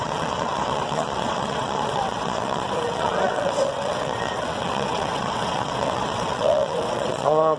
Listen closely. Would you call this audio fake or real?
fake